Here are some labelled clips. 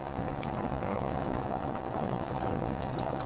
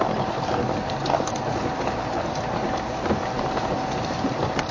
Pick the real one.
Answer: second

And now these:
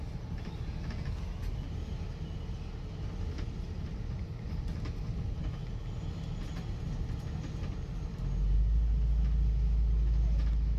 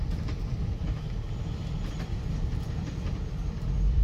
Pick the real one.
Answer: first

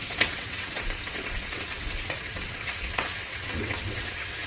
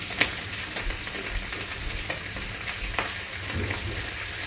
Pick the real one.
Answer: second